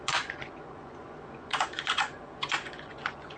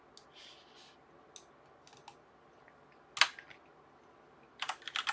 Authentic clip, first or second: second